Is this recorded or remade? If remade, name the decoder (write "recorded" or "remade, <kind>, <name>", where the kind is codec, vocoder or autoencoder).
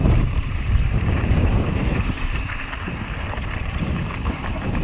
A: remade, vocoder, BigVGAN v2